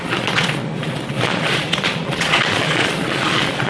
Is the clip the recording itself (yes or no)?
no